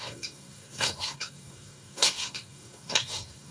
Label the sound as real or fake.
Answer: fake